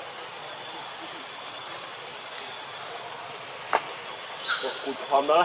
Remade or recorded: recorded